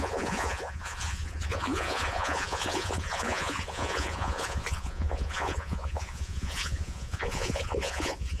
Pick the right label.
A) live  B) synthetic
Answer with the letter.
B